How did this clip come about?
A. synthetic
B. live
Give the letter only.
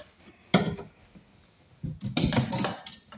B